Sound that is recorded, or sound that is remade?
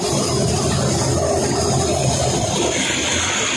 recorded